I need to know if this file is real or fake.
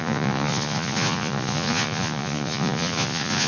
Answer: fake